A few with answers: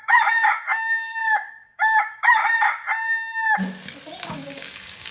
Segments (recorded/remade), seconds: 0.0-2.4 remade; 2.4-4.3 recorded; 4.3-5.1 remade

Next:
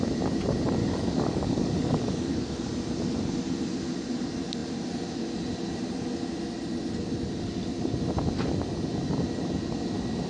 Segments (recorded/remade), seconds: 0.0-0.8 recorded; 0.8-2.7 remade; 2.7-10.3 recorded

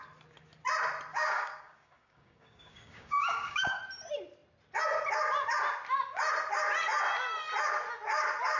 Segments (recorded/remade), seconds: 0.0-1.1 recorded; 1.1-3.8 remade; 3.8-8.6 recorded

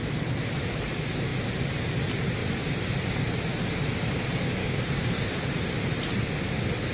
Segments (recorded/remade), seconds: 0.0-4.6 recorded; 4.6-5.6 remade; 5.6-6.9 recorded

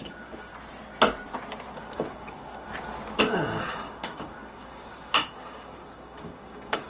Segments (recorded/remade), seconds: 0.0-0.5 remade; 0.5-1.7 recorded; 1.7-2.7 remade; 2.7-3.2 recorded; 3.2-6.9 remade